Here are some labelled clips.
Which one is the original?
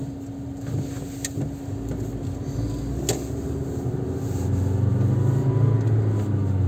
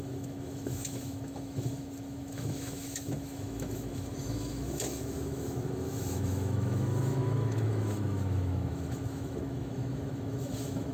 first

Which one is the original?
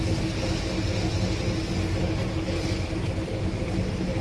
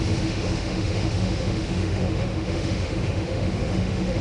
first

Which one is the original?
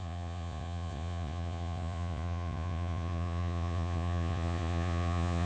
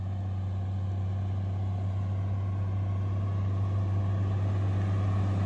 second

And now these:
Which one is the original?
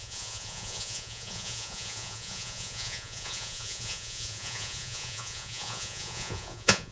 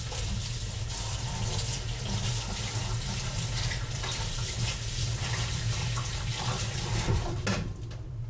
second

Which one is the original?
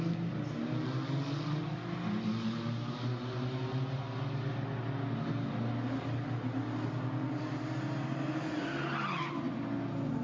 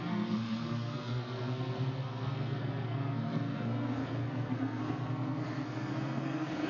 first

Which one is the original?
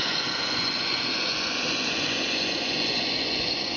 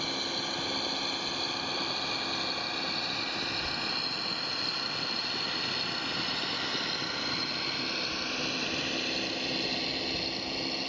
second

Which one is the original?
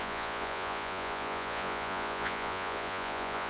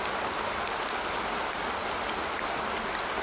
second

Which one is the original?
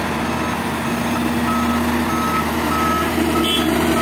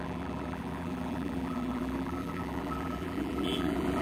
first